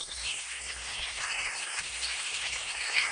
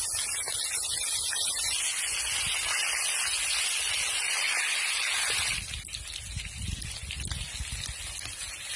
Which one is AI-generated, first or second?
first